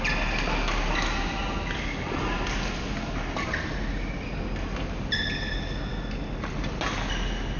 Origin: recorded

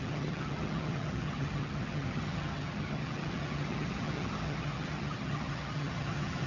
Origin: remade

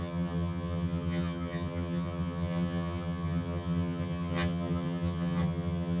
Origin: remade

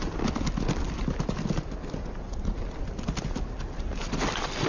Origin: recorded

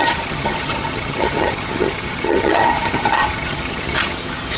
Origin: remade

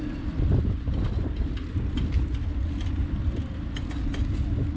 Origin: recorded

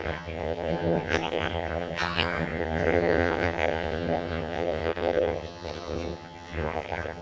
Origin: remade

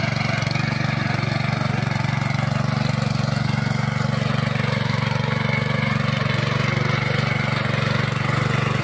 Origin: recorded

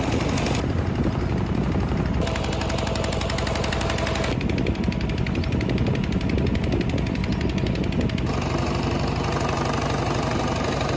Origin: recorded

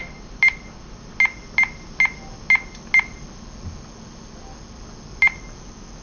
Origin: recorded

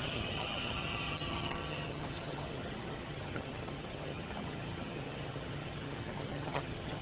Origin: remade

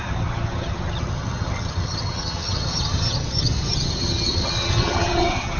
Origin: remade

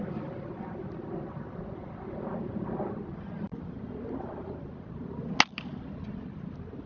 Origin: recorded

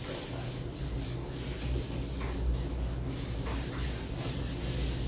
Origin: recorded